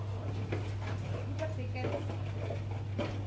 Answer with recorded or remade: recorded